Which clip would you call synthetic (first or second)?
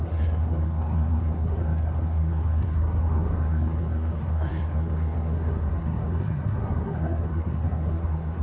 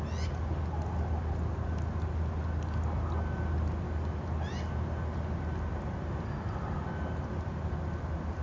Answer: first